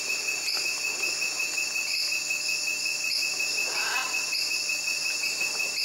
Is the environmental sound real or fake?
real